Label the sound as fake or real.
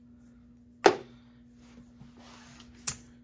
real